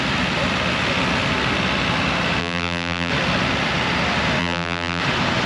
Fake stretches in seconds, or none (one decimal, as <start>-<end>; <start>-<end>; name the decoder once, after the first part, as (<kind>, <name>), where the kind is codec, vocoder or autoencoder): 2.4-3.1 (vocoder, BigVGAN v2); 4.4-5.0